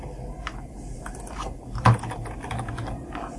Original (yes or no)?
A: yes